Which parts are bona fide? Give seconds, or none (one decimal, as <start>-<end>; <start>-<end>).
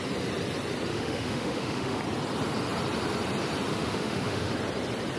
0.0-0.9; 2.0-3.7; 4.5-5.2